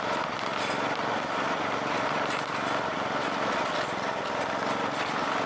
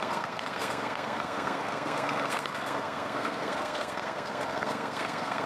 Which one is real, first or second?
first